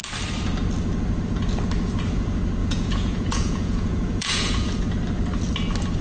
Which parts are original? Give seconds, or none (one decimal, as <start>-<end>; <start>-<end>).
0.0-2.6; 4.8-6.0